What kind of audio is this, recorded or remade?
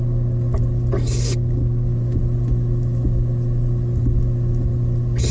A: recorded